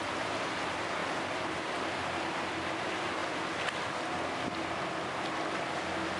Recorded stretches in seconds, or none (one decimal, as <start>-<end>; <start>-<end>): 0.0-1.0; 1.7-6.2